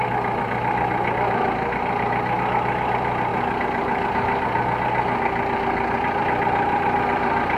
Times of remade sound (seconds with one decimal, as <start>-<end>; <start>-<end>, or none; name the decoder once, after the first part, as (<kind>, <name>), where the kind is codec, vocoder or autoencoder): none